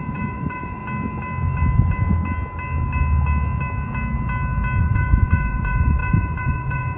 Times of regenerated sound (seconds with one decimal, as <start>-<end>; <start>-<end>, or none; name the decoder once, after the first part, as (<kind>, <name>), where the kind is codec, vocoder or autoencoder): 0.0-0.8 (vocoder, Vocos); 4.8-7.0